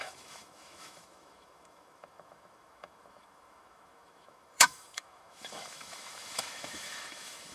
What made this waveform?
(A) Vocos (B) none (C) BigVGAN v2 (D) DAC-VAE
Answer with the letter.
D